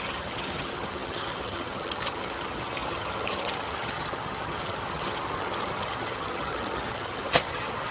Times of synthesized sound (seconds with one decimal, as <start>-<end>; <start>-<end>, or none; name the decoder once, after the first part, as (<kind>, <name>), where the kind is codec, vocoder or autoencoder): 0.0-7.9 (vocoder, HiFi-GAN)

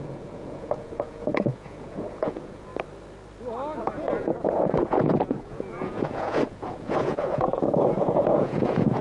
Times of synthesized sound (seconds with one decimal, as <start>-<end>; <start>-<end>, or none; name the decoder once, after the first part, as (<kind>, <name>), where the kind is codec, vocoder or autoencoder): 0.0-2.7 (vocoder, Vocos); 3.8-9.0

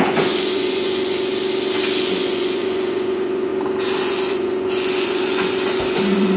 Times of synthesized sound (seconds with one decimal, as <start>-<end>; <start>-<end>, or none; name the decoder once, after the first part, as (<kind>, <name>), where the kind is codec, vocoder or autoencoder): 0.0-1.3 (vocoder, Vocos); 2.0-3.5; 4.0-6.4

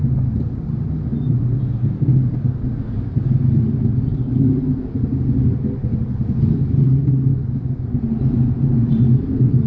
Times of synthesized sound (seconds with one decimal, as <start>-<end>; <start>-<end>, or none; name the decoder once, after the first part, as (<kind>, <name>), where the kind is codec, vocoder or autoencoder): none

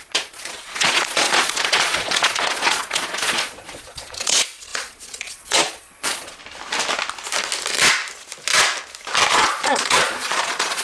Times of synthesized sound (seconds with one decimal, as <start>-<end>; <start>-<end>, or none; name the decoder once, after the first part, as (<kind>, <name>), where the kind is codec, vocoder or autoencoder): 0.0-6.4 (vocoder, Vocos); 9.3-10.8

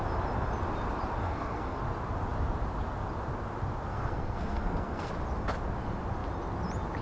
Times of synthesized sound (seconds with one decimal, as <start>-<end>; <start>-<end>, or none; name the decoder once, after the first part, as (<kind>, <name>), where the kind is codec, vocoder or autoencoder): 1.2-1.8 (codec, SNAC); 3.9-5.1